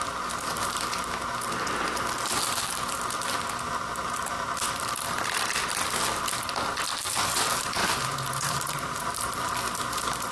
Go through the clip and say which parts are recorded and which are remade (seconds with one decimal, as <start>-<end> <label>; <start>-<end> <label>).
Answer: 0.0-7.8 recorded; 7.8-9.5 remade; 9.5-10.3 recorded